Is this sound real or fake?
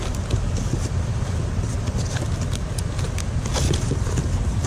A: real